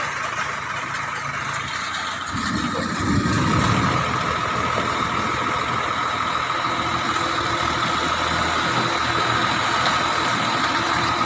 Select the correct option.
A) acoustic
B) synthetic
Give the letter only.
A